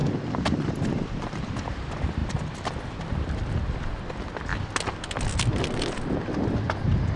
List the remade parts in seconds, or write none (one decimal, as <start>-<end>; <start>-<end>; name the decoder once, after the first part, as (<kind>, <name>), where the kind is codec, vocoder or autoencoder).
0.0-1.8 (vocoder, BigVGAN v2)